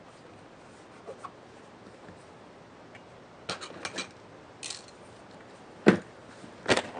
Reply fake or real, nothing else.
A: real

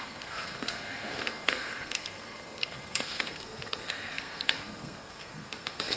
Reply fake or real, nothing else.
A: fake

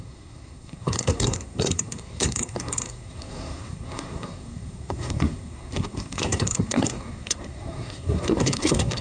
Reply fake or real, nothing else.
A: fake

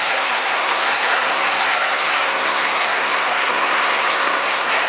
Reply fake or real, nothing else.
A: fake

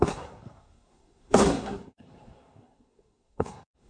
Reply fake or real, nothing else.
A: fake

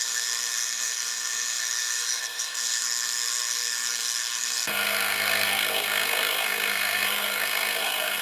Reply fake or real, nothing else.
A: fake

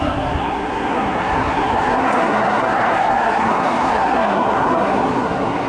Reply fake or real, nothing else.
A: fake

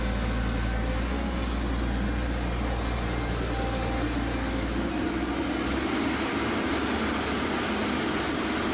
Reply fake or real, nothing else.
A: real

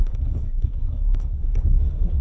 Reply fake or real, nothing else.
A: fake